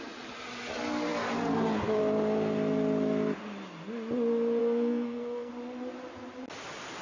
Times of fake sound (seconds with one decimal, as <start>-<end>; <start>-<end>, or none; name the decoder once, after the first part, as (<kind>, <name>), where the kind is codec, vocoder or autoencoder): 4.6-5.5 (codec, SNAC)